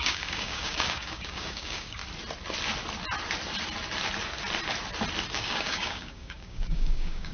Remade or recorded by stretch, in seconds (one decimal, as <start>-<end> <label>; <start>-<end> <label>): 0.0-2.0 remade; 2.0-5.3 recorded; 5.3-7.3 remade